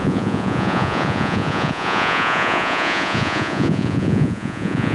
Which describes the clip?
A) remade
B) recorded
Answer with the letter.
A